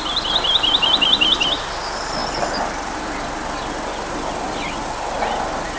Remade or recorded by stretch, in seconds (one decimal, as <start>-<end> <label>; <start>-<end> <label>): 0.0-5.8 recorded